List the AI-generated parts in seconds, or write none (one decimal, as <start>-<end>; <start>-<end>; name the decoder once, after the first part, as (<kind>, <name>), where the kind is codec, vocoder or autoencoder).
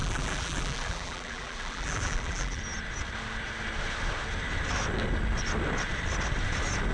0.0-2.6 (vocoder, BigVGAN v2)